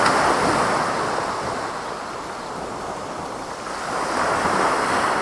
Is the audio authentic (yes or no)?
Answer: yes